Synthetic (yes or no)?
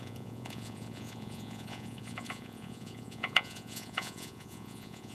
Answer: yes